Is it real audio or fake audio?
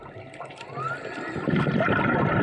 real